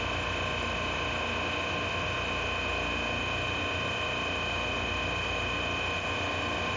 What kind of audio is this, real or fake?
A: real